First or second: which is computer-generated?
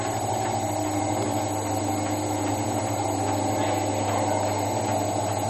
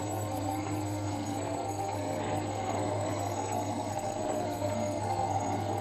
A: second